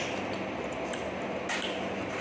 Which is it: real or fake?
real